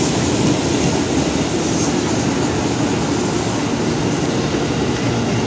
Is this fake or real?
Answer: real